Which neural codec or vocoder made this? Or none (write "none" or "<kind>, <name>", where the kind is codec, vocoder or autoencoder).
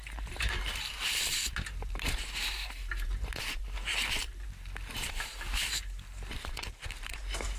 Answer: vocoder, BigVGAN v2